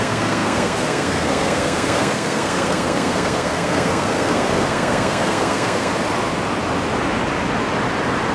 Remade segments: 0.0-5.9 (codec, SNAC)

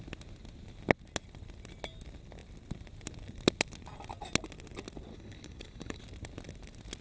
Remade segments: 5.1-6.0 (codec, HILCodec)